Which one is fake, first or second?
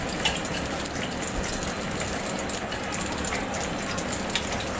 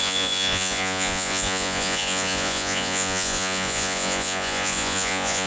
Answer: second